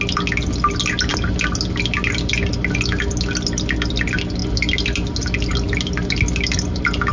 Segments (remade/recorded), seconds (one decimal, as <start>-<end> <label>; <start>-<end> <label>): 0.0-7.1 recorded

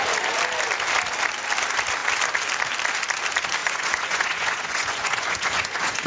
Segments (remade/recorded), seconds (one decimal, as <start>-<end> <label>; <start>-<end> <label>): 0.0-3.6 recorded; 3.6-6.1 remade